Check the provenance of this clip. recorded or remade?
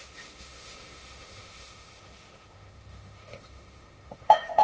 remade